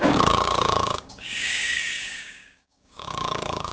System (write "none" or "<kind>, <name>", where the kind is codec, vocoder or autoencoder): codec, DAC